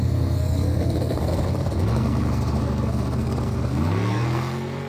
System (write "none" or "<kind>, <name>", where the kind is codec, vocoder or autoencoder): codec, SNAC